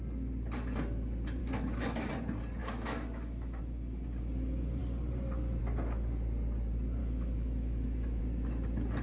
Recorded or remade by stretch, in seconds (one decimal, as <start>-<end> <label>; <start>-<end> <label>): 0.0-1.4 recorded; 1.4-2.1 remade; 2.1-2.6 recorded; 2.6-3.6 remade; 3.6-7.0 recorded; 7.0-8.2 remade; 8.2-9.0 recorded